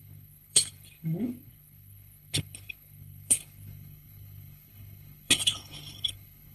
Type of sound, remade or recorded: remade